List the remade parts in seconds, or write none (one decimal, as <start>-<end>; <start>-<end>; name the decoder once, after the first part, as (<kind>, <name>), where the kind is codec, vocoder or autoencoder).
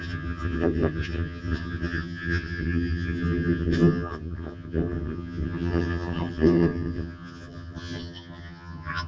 0.0-9.1 (vocoder, HiFi-GAN)